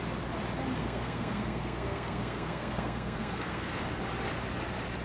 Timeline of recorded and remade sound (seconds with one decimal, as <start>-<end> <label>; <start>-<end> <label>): 0.0-0.8 recorded; 0.8-3.8 remade; 3.8-5.0 recorded